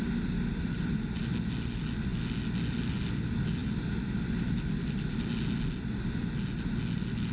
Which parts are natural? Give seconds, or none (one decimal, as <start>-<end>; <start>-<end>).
0.0-7.3